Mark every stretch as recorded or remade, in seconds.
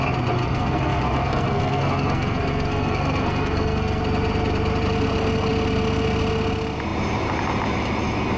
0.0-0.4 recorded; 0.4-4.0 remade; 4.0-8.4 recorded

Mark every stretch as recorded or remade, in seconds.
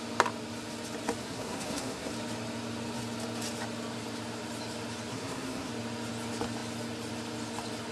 0.0-1.2 recorded; 1.2-2.1 remade; 2.1-5.1 recorded; 5.1-5.7 remade; 5.7-7.9 recorded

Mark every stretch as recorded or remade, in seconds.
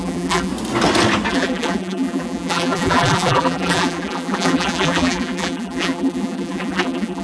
0.0-0.5 remade; 0.5-1.3 recorded; 1.3-7.2 remade